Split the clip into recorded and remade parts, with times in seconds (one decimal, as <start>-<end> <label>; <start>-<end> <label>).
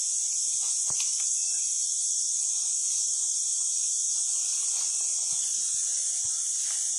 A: 0.0-7.0 recorded